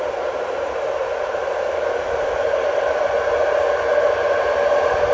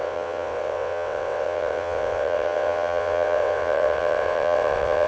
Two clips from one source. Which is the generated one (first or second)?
second